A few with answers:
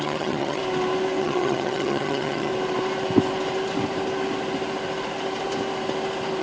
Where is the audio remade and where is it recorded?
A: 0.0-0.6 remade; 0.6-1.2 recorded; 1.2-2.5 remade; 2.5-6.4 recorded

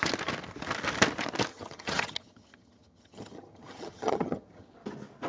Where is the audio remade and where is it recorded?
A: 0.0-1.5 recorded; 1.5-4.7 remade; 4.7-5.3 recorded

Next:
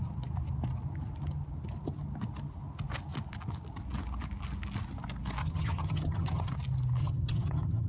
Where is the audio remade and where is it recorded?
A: 0.0-5.4 recorded; 5.4-6.5 remade; 6.5-7.0 recorded; 7.0-7.9 remade

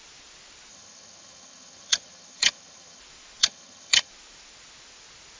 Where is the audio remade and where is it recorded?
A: 0.0-0.7 recorded; 0.7-3.0 remade; 3.0-3.4 recorded; 3.4-4.1 remade; 4.1-5.4 recorded

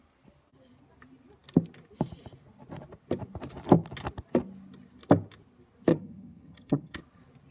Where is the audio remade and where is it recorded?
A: 0.0-5.9 recorded; 5.9-7.0 remade; 7.0-7.5 recorded

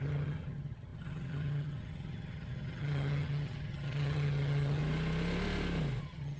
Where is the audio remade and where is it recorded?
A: 0.0-4.8 remade; 4.8-6.0 recorded; 6.0-6.4 remade

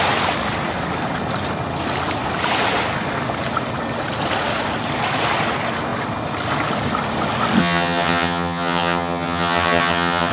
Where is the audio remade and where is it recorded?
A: 0.0-7.6 recorded; 7.6-10.3 remade